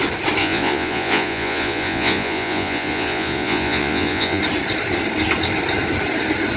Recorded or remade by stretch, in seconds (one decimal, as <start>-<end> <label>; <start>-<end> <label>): 0.0-0.4 recorded; 0.4-4.4 remade; 4.4-6.6 recorded